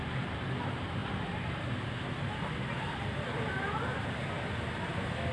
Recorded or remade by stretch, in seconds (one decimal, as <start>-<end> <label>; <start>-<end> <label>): 0.0-5.3 recorded